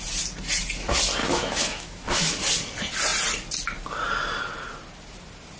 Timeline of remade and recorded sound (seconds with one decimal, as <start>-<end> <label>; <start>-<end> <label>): 0.0-1.2 recorded; 1.2-2.4 remade; 2.4-5.6 recorded